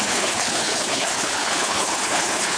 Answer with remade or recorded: remade